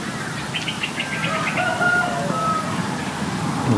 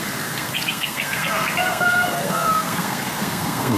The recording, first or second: first